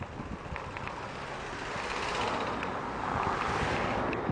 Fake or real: real